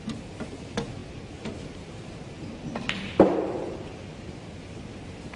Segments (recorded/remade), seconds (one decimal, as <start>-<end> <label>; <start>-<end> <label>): 0.0-5.4 recorded